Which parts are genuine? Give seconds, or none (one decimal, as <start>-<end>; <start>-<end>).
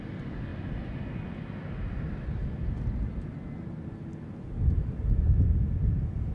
0.0-6.3